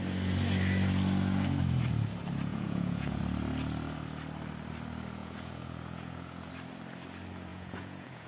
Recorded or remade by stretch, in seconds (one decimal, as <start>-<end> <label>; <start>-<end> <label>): 0.0-2.5 recorded; 2.5-3.2 remade; 3.2-5.2 recorded; 5.2-6.5 remade; 6.5-7.5 recorded; 7.5-8.3 remade